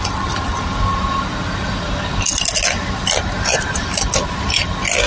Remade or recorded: recorded